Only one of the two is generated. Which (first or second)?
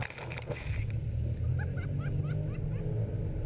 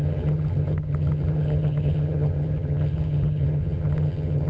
second